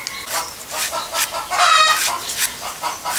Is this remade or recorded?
recorded